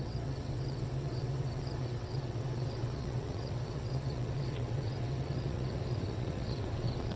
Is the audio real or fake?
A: fake